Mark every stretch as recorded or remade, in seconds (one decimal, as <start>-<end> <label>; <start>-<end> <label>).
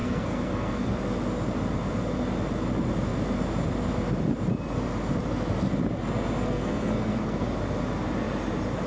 0.0-0.9 remade; 0.9-6.4 recorded; 6.4-7.5 remade; 7.5-8.9 recorded